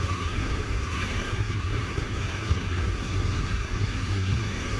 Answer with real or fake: fake